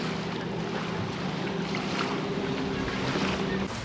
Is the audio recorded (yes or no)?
yes